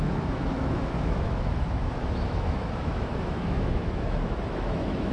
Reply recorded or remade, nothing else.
remade